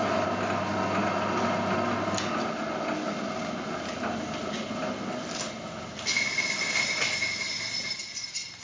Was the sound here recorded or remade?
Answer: recorded